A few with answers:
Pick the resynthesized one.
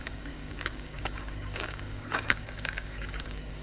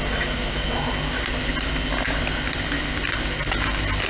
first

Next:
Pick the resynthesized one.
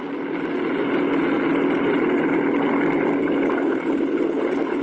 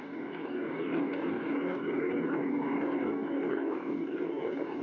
second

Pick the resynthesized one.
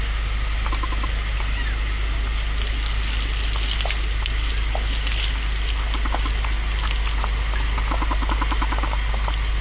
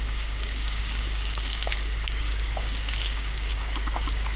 second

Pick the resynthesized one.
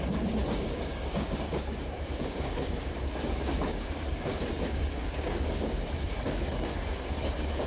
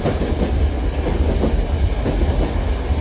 first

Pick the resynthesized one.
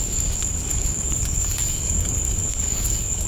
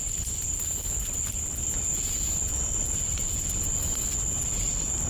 first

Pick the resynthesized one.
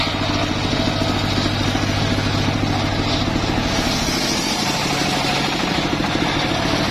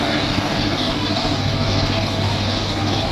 second